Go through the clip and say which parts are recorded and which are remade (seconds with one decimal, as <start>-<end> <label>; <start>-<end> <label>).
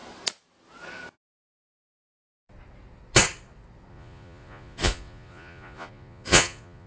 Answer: 0.0-3.9 recorded; 3.9-6.9 remade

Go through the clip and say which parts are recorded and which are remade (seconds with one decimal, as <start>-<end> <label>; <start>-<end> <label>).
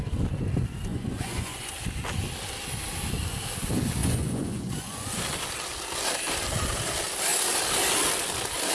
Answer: 0.0-0.9 recorded; 0.9-1.7 remade; 1.7-4.0 recorded; 4.0-5.2 remade; 5.2-8.7 recorded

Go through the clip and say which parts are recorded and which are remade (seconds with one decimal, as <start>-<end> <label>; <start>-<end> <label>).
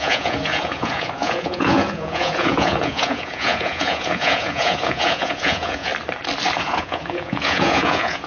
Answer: 0.0-5.9 remade; 5.9-6.6 recorded; 6.6-8.3 remade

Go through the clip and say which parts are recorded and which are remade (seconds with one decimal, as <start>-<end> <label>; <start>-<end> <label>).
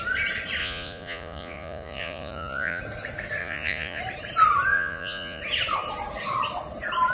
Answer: 0.0-0.6 recorded; 0.6-2.8 remade; 2.8-3.4 recorded; 3.4-4.0 remade; 4.0-4.7 recorded; 4.7-5.4 remade; 5.4-7.1 recorded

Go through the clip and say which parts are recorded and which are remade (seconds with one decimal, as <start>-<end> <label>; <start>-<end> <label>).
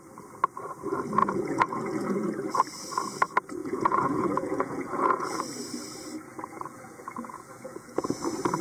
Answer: 0.0-1.2 recorded; 1.2-2.3 remade; 2.3-3.6 recorded; 3.6-5.4 remade; 5.4-6.3 recorded; 6.3-8.2 remade; 8.2-8.6 recorded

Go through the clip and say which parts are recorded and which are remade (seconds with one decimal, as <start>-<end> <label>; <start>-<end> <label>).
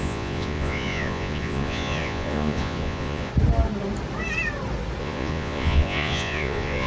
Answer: 0.0-3.3 remade; 3.3-5.0 recorded; 5.0-6.9 remade